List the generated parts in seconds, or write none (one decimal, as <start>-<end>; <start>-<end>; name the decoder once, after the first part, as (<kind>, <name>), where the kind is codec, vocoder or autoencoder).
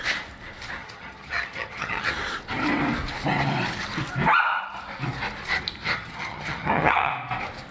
0.8-2.1 (vocoder, HiFi-GAN); 5.8-7.1